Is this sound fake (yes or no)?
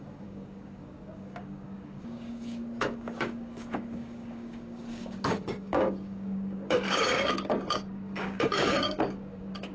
yes